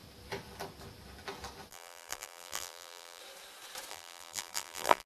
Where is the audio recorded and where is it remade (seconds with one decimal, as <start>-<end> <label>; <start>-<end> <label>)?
0.0-1.7 recorded; 1.7-3.2 remade; 3.2-3.9 recorded; 3.9-5.1 remade